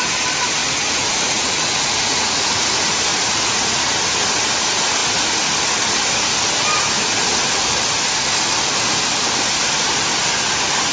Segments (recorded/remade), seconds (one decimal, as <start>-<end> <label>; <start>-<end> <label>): 0.0-0.6 recorded; 0.6-2.7 remade; 2.7-3.1 recorded; 3.1-3.9 remade; 3.9-10.9 recorded